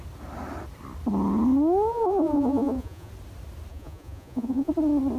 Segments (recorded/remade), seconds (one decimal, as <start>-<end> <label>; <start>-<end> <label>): 0.0-1.9 recorded; 1.9-3.1 remade; 3.1-3.7 recorded; 3.7-4.7 remade; 4.7-5.2 recorded